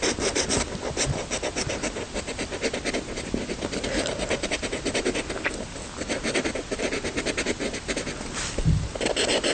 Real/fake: real